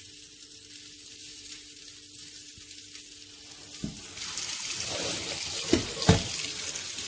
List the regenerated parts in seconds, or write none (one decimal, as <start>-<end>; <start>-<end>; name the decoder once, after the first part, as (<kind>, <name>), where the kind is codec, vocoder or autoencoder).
1.2-1.8 (vocoder, BigVGAN v2)